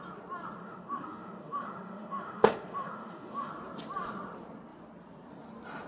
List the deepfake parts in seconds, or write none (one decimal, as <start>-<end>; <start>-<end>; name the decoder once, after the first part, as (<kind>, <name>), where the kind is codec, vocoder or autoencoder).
0.6-3.5 (autoencoder, DAC-VAE)